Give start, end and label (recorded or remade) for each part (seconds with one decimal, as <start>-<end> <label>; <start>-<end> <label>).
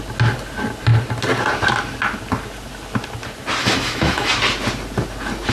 0.0-3.6 recorded; 3.6-4.3 remade; 4.3-5.5 recorded